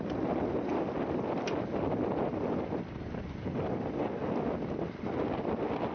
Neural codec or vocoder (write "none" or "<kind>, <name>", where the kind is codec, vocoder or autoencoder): none